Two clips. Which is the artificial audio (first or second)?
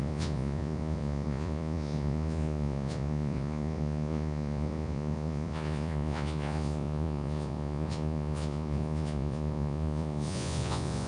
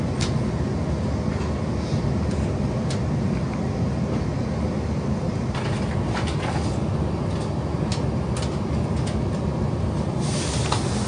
first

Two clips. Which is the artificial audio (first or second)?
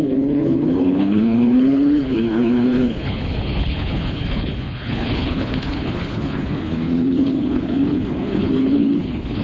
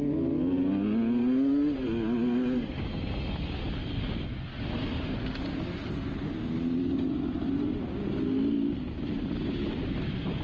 first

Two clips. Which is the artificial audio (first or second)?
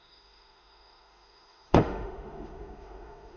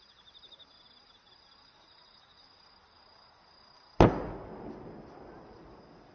first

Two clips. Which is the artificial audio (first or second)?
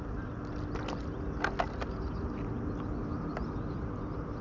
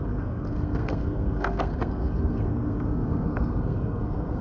second